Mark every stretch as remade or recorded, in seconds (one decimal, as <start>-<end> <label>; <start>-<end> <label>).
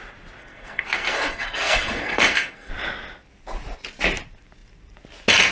0.0-0.4 recorded; 0.4-2.7 remade; 2.7-5.5 recorded